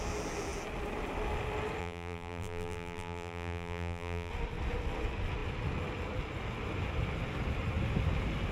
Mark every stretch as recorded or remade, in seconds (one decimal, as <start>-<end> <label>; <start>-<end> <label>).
0.0-1.8 recorded; 1.8-4.3 remade; 4.3-8.5 recorded